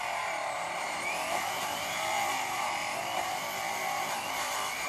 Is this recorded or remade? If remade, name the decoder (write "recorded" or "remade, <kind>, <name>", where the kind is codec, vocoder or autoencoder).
remade, vocoder, BigVGAN v2